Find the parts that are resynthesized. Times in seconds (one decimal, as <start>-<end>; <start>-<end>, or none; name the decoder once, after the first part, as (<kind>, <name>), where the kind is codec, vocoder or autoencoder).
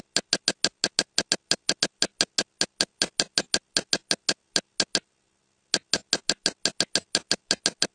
none